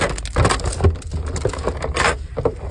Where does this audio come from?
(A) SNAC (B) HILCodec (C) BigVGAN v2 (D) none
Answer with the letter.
D